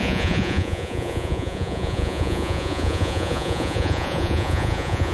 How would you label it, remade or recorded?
remade